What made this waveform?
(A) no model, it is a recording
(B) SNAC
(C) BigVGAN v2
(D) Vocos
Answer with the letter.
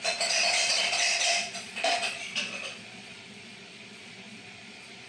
D